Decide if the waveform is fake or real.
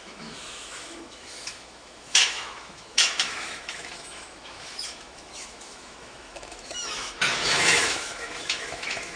fake